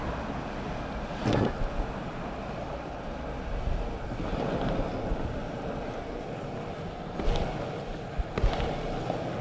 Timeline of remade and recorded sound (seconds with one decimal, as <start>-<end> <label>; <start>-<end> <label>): 0.0-9.4 recorded